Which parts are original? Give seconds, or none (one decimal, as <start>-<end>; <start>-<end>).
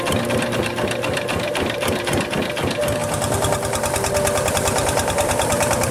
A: 3.0-4.5